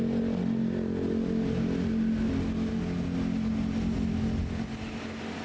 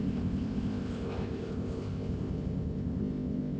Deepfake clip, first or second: second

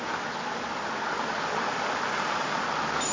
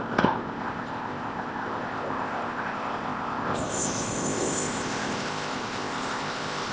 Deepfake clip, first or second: second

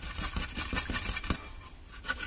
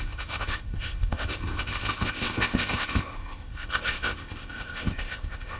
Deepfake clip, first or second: second